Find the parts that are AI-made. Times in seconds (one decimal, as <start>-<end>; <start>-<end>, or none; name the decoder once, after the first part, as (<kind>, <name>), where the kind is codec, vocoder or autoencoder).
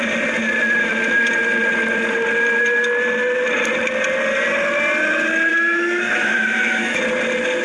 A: 5.5-7.0 (autoencoder, DAC-VAE)